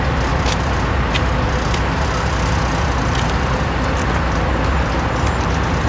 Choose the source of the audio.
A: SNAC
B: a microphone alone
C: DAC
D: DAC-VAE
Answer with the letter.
B